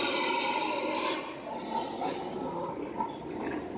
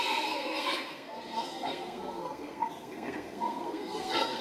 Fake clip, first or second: second